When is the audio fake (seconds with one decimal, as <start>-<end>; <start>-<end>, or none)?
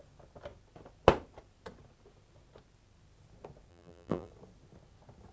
3.7-4.3